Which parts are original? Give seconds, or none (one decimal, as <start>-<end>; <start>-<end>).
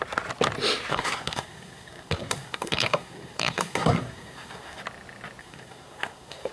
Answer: 0.0-0.9; 4.8-5.4